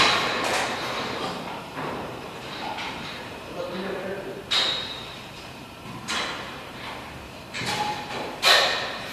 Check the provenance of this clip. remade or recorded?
remade